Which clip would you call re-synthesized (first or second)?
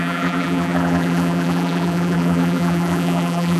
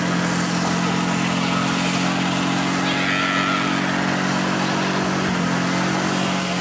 first